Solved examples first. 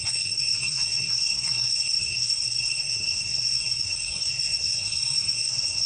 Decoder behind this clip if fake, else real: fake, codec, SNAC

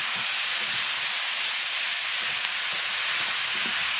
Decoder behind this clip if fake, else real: real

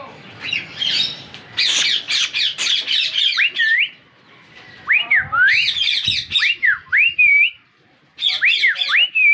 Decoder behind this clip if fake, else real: fake, vocoder, BigVGAN v2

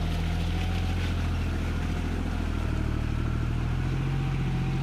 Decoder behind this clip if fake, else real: real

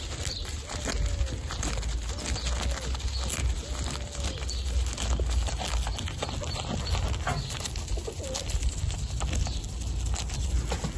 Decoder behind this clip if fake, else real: real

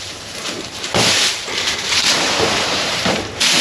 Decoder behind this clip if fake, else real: fake, vocoder, BigVGAN v2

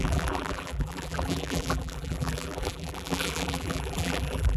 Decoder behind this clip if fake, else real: fake, vocoder, BigVGAN v2